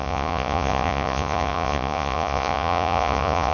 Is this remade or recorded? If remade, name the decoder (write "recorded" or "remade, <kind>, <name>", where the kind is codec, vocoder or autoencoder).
remade, vocoder, Vocos